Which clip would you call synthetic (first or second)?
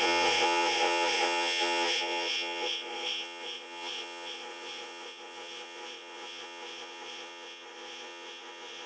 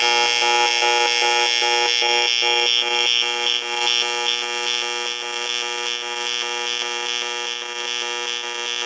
first